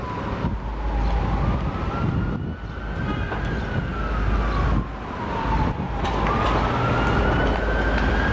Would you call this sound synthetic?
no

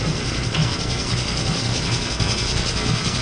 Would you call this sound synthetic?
yes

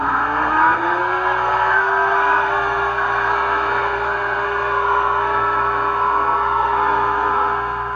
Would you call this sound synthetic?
yes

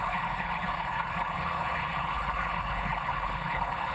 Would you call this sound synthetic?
yes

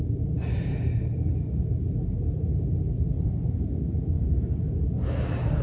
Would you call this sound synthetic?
no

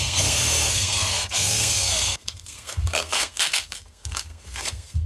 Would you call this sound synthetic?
yes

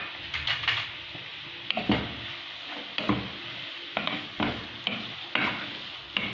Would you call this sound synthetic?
no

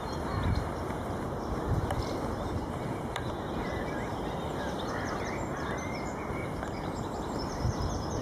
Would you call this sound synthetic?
yes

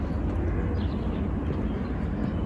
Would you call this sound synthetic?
no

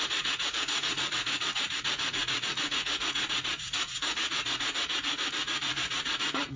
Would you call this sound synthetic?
yes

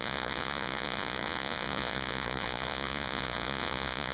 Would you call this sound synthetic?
yes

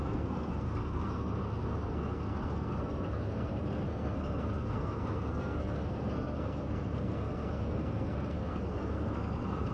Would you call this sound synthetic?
yes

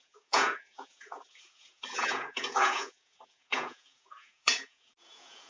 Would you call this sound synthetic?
yes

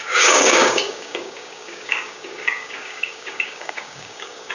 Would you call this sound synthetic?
yes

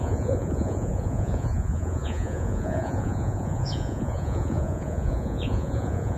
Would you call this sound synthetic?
yes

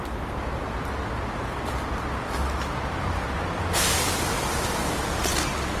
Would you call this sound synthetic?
no